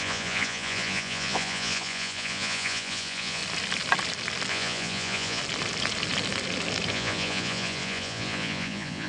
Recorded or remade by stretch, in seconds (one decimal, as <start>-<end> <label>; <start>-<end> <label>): 0.0-3.4 remade; 3.4-4.5 recorded; 4.5-5.4 remade; 5.4-6.9 recorded; 6.9-9.1 remade